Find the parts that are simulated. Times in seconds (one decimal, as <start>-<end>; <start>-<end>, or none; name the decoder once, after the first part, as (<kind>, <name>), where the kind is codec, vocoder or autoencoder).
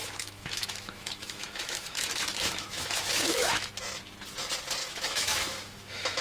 0.0-3.7 (autoencoder, DAC-VAE); 4.8-6.2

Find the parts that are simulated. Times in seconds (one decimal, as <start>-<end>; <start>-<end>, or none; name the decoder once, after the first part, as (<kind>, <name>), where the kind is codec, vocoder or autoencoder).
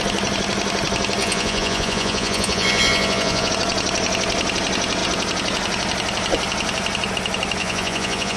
1.2-3.5 (vocoder, Vocos); 7.6-8.4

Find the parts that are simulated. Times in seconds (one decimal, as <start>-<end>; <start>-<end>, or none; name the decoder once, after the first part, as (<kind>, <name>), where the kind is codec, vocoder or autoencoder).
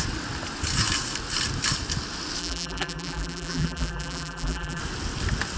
2.4-4.8 (vocoder, BigVGAN v2)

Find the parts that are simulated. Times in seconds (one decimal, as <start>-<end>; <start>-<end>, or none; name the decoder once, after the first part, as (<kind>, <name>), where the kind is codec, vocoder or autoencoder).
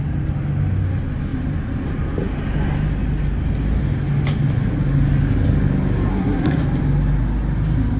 6.1-6.6 (codec, SNAC)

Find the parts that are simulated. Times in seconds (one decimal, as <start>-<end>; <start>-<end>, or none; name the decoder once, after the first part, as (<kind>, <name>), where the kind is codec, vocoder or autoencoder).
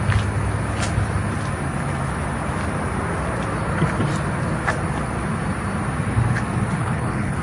6.8-7.4 (codec, HILCodec)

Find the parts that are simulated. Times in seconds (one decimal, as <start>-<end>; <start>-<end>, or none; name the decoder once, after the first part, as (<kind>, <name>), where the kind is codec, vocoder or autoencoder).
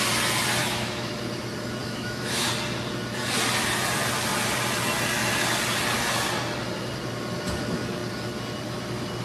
0.6-1.1 (autoencoder, DAC-VAE); 1.8-2.5